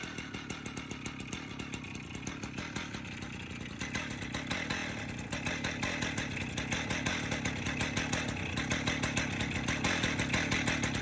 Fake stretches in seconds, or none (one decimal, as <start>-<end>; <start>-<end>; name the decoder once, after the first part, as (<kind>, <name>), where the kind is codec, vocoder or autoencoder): none